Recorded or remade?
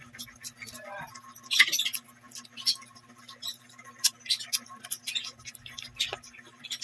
recorded